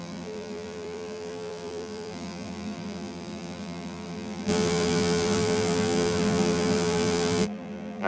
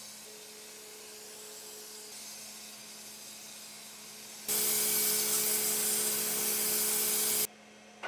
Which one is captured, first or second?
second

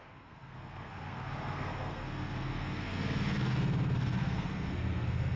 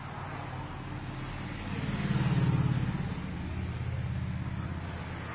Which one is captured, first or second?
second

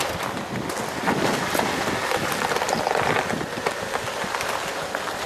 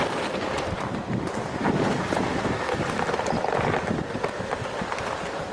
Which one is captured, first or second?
first